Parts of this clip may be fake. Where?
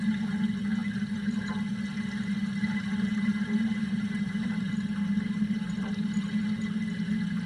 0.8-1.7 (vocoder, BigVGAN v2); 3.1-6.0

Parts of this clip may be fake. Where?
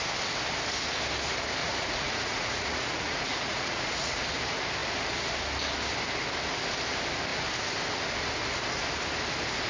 1.6-4.2 (vocoder, Vocos)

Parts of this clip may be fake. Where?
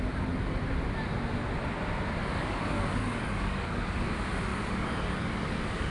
2.2-3.9 (codec, DAC); 4.5-5.9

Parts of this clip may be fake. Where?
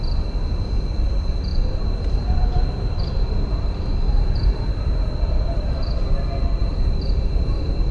1.5-6.0 (vocoder, BigVGAN v2); 6.6-7.9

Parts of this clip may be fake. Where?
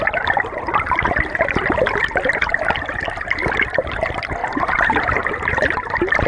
4.4-6.3 (vocoder, BigVGAN v2)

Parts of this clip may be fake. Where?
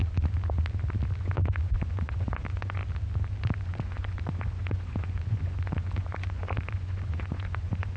1.2-2.8 (vocoder, Vocos); 3.6-8.0